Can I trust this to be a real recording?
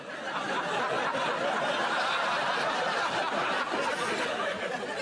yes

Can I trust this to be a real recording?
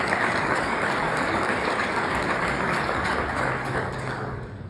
no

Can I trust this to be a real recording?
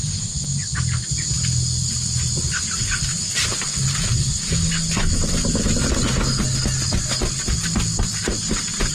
yes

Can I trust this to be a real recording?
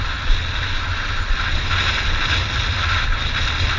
yes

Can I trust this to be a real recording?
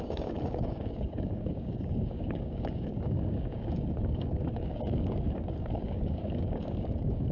no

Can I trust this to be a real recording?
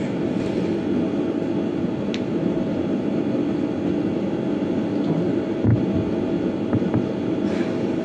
yes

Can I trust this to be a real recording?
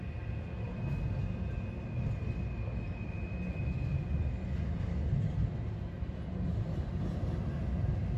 yes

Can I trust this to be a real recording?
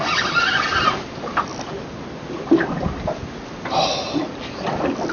yes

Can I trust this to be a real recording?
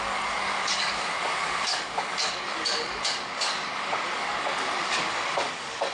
no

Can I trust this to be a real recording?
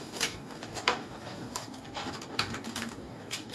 no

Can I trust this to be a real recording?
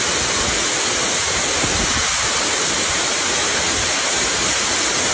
yes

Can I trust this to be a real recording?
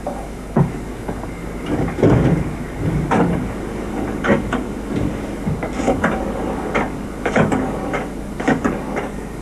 no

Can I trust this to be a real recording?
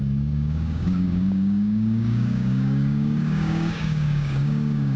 no